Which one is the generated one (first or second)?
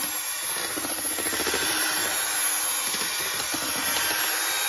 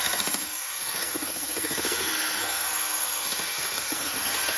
second